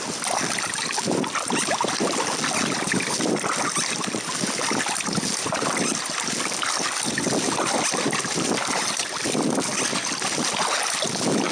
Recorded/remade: recorded